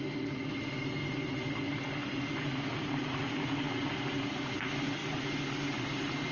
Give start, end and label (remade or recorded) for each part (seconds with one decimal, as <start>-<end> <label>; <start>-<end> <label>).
0.0-6.3 recorded